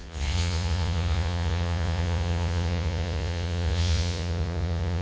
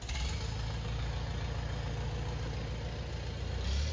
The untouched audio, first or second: second